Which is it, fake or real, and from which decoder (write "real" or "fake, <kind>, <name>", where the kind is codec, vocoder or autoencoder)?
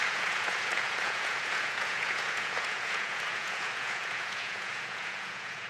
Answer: fake, vocoder, Vocos